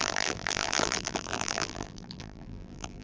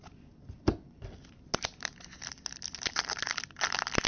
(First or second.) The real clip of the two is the second